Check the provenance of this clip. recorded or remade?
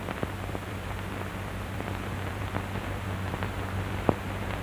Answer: remade